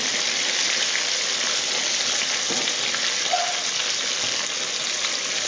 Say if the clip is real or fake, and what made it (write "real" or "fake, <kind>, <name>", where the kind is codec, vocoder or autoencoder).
real